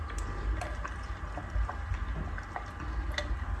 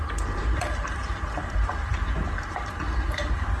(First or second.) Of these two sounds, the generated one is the second